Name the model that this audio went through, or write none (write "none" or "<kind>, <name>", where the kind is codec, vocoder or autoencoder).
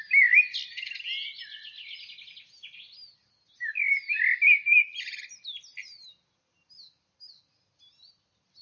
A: none